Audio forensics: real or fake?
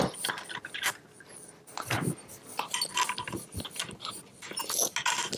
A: real